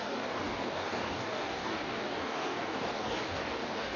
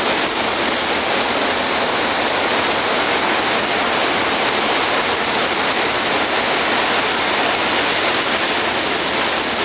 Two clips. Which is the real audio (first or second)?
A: second